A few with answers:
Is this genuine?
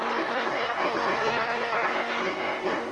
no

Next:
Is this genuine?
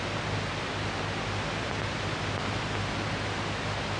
yes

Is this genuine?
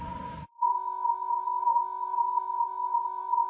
no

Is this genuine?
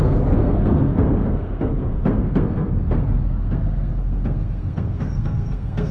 no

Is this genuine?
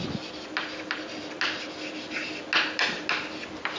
yes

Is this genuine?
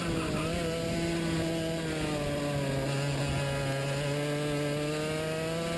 yes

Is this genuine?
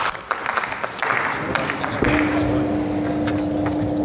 yes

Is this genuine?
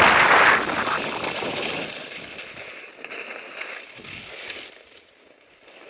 yes